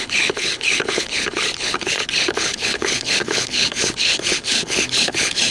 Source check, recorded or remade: remade